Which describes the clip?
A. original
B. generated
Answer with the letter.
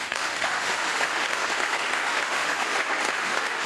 B